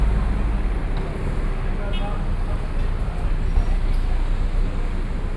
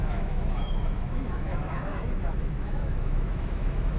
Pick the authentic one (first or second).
first